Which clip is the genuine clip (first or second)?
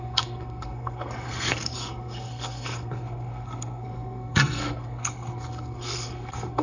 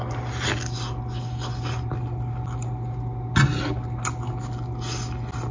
second